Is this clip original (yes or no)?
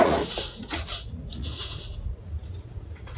no